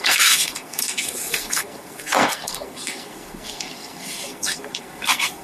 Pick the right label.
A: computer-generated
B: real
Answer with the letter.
A